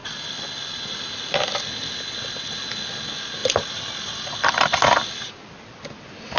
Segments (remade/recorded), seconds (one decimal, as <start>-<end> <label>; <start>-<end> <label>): 0.0-3.4 recorded; 3.4-4.3 remade; 4.3-6.4 recorded

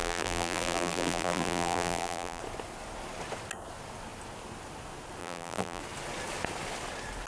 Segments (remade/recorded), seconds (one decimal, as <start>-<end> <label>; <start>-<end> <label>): 0.0-2.4 remade; 2.4-5.2 recorded; 5.2-5.8 remade; 5.8-7.3 recorded